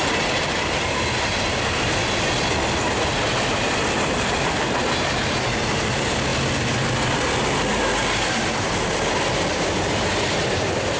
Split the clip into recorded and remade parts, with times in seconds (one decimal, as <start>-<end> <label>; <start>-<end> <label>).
0.0-11.0 recorded